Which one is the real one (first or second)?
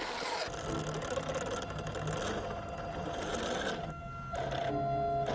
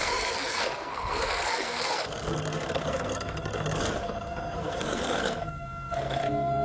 first